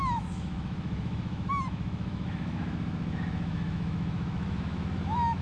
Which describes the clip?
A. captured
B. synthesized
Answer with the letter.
B